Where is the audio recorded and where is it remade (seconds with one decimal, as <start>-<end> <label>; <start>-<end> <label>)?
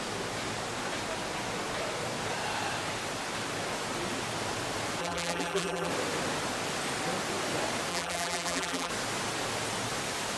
0.0-5.0 recorded; 5.0-5.9 remade; 5.9-7.9 recorded; 7.9-8.9 remade; 8.9-10.4 recorded